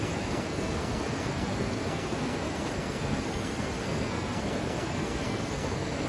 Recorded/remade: remade